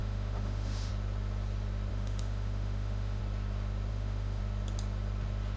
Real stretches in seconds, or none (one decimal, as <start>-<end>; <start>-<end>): 0.9-1.9; 3.2-3.9; 4.4-5.6